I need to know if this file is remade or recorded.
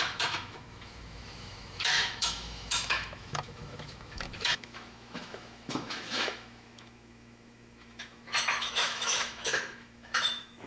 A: remade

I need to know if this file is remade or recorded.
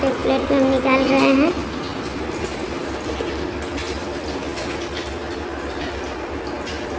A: recorded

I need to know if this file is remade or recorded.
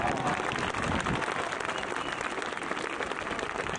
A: recorded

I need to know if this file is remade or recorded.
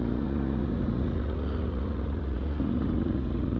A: remade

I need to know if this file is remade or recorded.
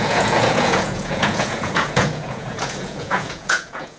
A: remade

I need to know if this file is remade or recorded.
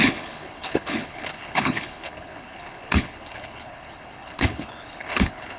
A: remade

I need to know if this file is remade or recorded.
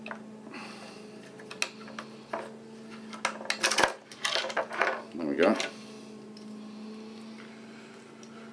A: recorded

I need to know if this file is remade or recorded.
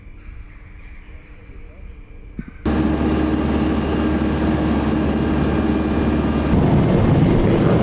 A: recorded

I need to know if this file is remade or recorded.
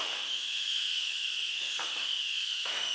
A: remade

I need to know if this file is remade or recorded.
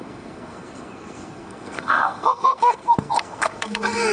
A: remade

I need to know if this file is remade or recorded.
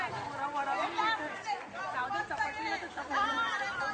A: recorded